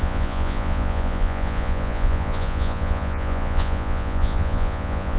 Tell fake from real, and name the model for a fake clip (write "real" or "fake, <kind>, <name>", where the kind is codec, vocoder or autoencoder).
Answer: fake, vocoder, Vocos